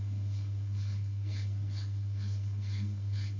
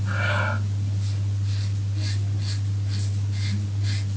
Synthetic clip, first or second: first